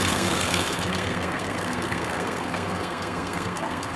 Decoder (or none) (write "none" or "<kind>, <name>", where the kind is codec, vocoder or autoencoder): codec, SNAC